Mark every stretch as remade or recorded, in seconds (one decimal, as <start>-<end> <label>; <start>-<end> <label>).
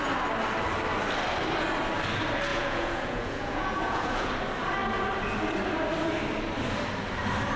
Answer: 0.0-2.5 recorded; 2.5-4.3 remade; 4.3-7.6 recorded